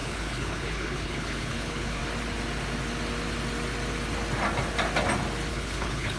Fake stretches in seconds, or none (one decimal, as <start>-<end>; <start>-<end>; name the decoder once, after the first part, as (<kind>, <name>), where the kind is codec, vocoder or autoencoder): 0.0-2.0 (codec, HILCodec); 5.5-6.2